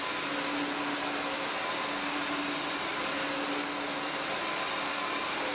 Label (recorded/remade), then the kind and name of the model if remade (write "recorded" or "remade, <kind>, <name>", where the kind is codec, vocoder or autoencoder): recorded